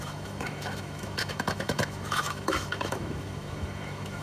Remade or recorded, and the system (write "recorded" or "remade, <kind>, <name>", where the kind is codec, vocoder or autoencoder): remade, autoencoder, DAC-VAE